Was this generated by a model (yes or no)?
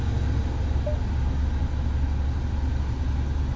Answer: no